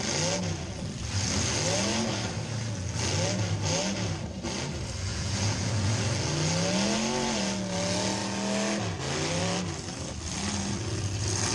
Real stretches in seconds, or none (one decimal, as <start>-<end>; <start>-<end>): 0.0-5.1; 6.0-11.5

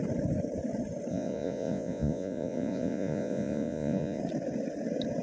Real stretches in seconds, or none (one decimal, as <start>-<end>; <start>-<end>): 0.0-1.1; 4.2-5.2

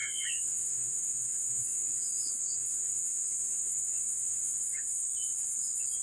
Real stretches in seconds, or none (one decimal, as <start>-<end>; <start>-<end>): 2.1-2.6; 5.0-6.0

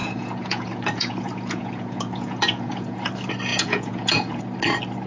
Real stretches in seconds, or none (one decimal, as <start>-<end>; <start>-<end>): 3.1-3.5; 4.4-5.1

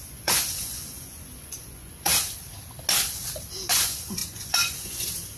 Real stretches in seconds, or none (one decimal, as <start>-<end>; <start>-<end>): 2.1-3.7

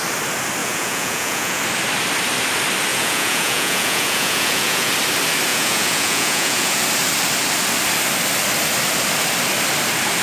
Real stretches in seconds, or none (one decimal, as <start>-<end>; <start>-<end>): 0.0-0.6; 1.6-2.9; 4.9-5.5; 6.8-10.2

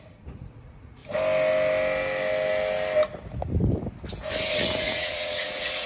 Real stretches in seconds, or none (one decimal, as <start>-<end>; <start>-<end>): 1.0-4.5